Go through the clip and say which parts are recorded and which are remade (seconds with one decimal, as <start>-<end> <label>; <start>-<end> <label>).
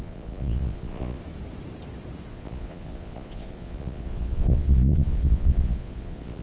0.0-1.2 remade; 1.2-2.3 recorded; 2.3-6.4 remade